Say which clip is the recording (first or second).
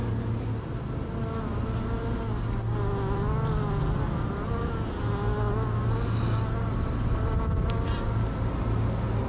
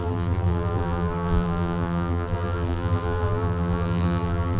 first